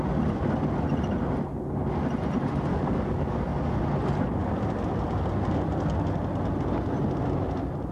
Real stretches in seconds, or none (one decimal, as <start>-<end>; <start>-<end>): 0.0-2.7; 3.8-7.9